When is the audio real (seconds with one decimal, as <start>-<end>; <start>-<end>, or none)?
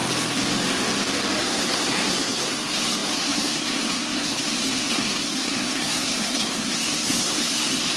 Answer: 0.0-1.4